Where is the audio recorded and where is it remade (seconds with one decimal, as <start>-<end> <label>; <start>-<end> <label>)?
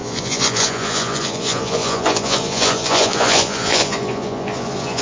0.0-5.0 remade